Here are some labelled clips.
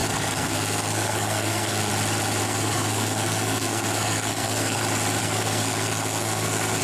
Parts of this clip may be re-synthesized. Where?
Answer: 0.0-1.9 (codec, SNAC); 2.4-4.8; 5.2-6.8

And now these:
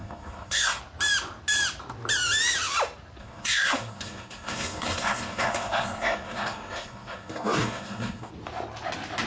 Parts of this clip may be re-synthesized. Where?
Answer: 0.0-0.8 (codec, SNAC); 3.2-8.3

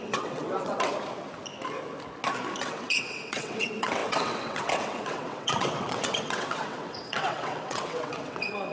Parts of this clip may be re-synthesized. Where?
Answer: 0.0-0.9 (vocoder, WaveNeXt); 2.6-8.7

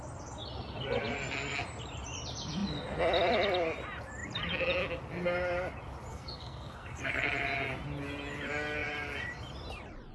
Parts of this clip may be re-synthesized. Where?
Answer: 6.1-7.0 (codec, SNAC)

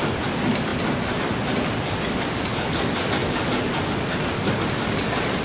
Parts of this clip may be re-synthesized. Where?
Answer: none

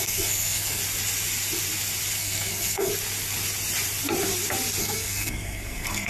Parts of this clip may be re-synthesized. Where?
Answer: 0.0-0.8 (codec, SNAC); 2.2-2.9; 4.8-6.1